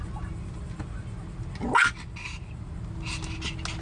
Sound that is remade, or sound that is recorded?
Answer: recorded